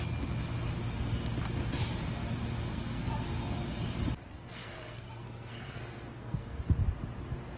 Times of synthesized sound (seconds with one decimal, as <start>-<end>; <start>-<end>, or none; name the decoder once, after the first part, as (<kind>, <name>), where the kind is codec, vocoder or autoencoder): 2.7-3.3 (codec, SNAC); 4.3-6.6